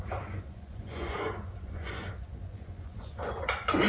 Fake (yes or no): yes